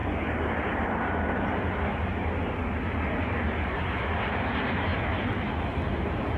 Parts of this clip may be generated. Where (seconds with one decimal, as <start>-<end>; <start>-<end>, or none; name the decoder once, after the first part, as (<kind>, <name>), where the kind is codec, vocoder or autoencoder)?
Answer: 0.0-4.9 (vocoder, BigVGAN v2); 5.9-6.4

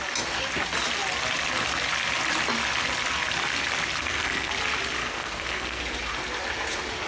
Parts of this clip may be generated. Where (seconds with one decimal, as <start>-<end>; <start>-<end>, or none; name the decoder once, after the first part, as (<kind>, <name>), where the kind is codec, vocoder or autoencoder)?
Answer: 4.0-4.5 (codec, SNAC); 5.0-5.8

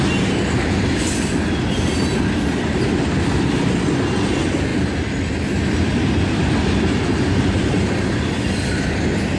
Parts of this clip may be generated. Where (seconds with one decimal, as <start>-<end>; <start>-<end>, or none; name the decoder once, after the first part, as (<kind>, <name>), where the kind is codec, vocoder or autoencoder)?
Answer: none

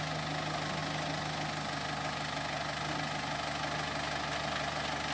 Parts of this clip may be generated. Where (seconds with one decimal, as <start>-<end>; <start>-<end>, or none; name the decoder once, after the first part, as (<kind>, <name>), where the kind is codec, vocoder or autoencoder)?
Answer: none